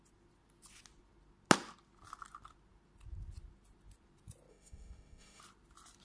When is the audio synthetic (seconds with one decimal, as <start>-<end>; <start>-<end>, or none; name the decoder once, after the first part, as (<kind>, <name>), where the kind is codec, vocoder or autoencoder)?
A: 4.5-5.4 (autoencoder, DAC-VAE)